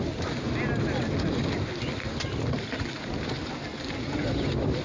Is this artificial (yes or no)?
no